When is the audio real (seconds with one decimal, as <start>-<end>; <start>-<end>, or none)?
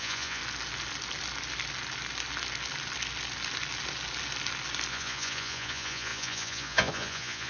0.4-4.9